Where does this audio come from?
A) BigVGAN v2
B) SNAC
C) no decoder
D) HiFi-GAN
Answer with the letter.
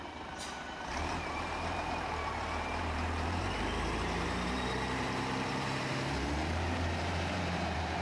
A